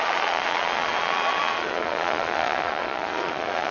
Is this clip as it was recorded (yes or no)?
no